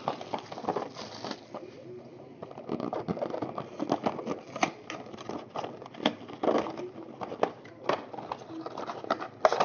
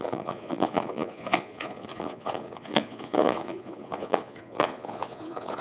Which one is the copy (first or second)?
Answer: second